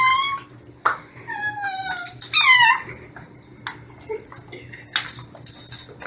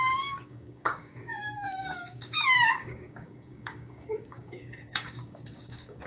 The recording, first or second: first